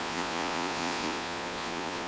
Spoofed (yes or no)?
yes